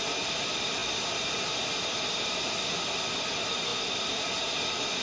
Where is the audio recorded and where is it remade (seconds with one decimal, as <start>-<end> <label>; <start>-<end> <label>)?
0.0-5.0 recorded